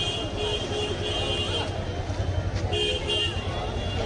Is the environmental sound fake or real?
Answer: real